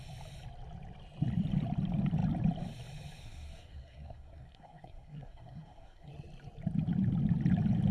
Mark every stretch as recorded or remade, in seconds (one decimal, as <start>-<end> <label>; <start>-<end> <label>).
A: 0.0-3.2 recorded; 3.2-6.1 remade; 6.1-7.9 recorded